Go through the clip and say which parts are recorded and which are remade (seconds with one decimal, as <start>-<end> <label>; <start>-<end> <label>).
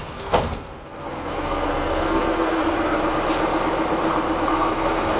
0.0-2.6 remade; 2.6-4.5 recorded; 4.5-5.2 remade